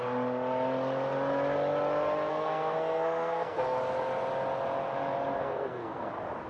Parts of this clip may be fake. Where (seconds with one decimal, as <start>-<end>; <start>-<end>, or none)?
2.3-3.8; 5.4-6.1